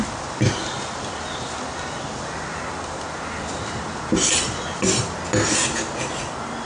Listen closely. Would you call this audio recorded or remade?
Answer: recorded